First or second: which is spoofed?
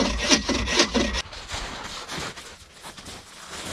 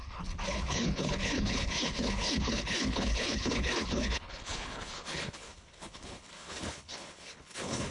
second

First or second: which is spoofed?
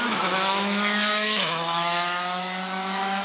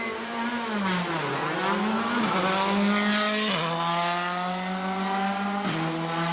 first